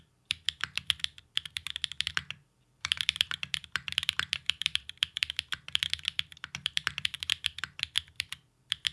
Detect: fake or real fake